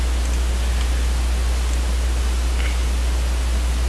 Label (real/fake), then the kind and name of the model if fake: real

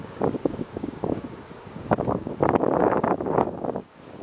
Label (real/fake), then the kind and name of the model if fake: fake, codec, DAC